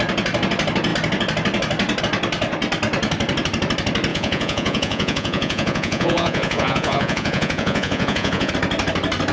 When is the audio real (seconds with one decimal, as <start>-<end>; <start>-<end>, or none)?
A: 0.0-4.1; 8.5-9.3